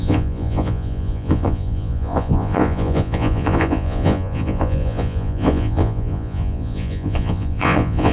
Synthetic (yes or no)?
yes